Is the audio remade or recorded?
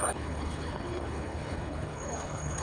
remade